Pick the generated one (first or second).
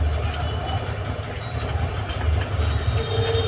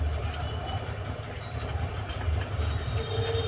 second